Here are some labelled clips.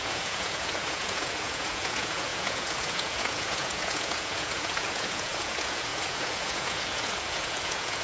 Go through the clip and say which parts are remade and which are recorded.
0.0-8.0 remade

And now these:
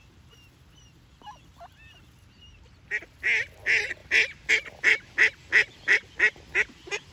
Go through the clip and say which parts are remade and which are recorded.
0.0-7.1 recorded

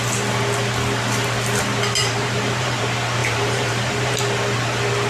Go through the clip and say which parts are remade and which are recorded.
0.0-2.0 recorded; 2.0-2.8 remade; 2.8-3.2 recorded; 3.2-4.2 remade; 4.2-5.1 recorded

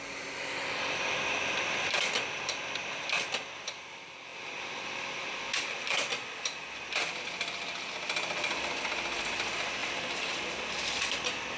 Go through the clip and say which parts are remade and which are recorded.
0.0-9.8 recorded; 9.8-10.5 remade; 10.5-11.6 recorded

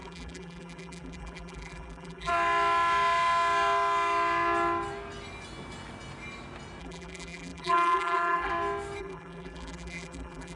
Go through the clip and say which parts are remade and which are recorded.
0.0-2.3 remade; 2.3-6.8 recorded; 6.8-8.5 remade; 8.5-9.0 recorded; 9.0-10.6 remade

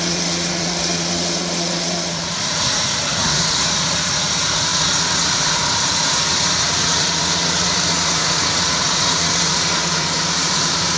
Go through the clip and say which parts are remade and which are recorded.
0.0-11.0 remade